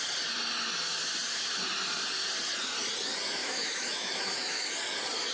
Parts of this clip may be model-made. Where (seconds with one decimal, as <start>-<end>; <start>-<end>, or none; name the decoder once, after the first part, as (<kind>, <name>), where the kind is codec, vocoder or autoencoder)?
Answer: 3.4-4.7 (autoencoder, DAC-VAE)